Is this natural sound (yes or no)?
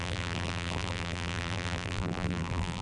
no